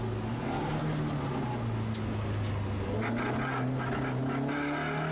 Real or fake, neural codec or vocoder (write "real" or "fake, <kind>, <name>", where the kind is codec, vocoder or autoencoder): real